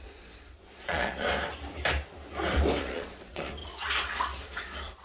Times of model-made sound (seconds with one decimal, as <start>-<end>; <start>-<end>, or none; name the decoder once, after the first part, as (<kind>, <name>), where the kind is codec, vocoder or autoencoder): 0.0-1.3 (vocoder, Vocos); 2.8-5.0